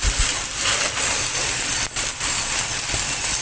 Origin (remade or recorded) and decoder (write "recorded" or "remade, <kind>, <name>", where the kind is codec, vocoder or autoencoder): recorded